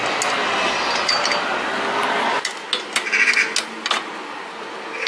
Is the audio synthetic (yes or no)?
no